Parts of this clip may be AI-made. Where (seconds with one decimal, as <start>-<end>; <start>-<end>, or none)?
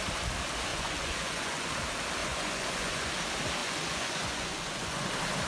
0.7-1.7; 2.2-3.1; 3.6-5.1